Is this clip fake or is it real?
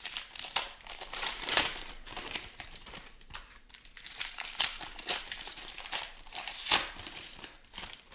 fake